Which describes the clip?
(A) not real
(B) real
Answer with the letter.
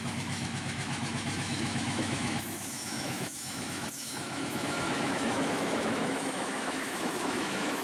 A